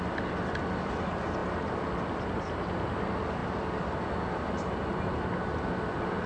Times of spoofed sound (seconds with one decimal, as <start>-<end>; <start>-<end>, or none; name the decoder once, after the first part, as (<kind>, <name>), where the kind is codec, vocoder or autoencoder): none